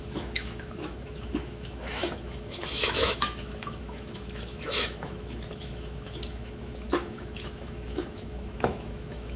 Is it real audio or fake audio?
fake